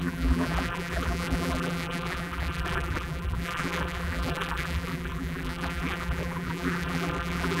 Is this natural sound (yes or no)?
no